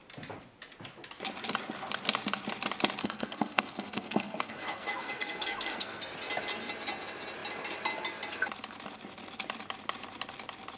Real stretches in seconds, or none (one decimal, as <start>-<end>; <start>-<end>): 0.0-3.0; 6.0-10.8